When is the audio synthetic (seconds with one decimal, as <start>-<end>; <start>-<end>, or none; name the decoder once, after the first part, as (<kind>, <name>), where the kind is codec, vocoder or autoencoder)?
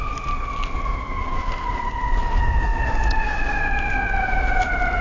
none